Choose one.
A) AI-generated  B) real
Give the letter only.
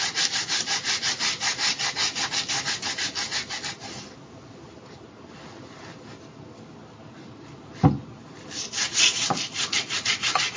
B